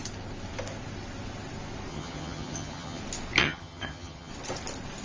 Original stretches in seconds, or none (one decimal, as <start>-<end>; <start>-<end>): 0.0-1.9; 3.0-3.4; 4.3-5.0